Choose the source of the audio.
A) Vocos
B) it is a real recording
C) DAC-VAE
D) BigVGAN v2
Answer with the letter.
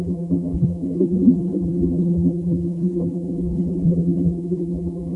D